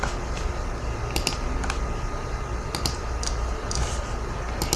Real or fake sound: real